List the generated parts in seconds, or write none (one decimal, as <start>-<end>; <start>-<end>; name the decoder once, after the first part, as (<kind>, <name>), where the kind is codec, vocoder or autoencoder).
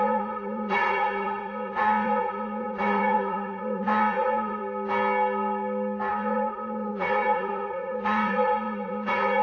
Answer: 0.0-4.6 (vocoder, Vocos); 6.1-9.4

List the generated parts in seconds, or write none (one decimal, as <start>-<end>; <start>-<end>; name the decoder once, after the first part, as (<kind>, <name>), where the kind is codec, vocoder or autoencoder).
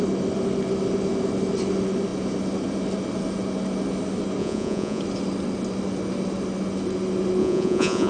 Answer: 4.4-5.0 (vocoder, Vocos); 7.4-8.1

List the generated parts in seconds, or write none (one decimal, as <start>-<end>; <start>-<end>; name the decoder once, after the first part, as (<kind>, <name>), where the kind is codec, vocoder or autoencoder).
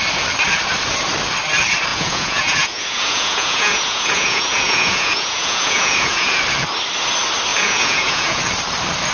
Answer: 1.9-6.4 (vocoder, Vocos); 7.5-8.4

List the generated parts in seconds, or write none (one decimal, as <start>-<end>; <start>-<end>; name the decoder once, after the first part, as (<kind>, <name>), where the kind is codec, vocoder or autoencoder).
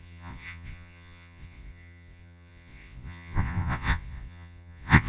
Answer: 0.0-5.1 (vocoder, Vocos)